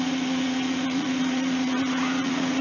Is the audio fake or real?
fake